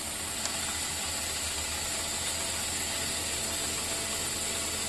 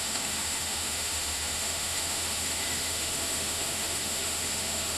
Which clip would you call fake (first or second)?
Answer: second